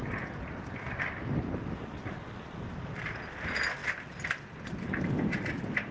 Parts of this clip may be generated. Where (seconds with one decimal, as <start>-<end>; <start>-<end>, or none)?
none